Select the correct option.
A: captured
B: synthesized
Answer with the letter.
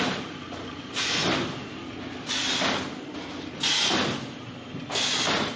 A